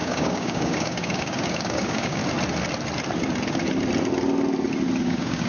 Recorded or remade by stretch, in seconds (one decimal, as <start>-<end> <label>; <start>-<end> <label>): 0.0-2.2 remade; 2.2-5.0 recorded; 5.0-5.5 remade